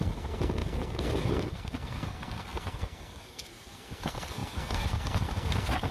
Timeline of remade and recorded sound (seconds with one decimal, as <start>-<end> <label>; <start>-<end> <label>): 0.0-5.9 remade